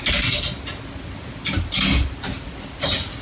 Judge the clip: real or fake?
real